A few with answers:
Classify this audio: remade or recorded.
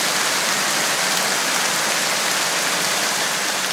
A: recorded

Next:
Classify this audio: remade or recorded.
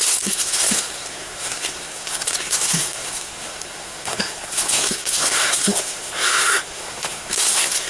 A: remade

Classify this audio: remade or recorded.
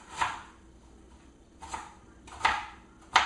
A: recorded